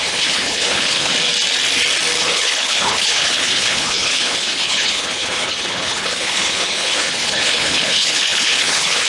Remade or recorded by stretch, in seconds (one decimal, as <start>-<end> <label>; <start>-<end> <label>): 0.0-1.1 remade; 1.1-2.2 recorded; 2.2-9.1 remade